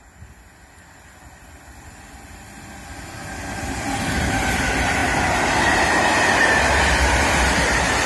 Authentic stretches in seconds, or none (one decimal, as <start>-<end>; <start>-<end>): 0.0-8.1